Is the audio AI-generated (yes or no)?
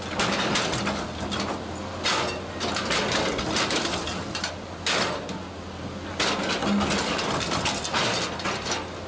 no